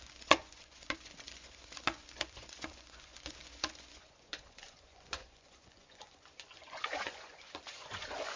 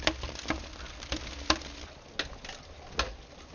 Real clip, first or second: second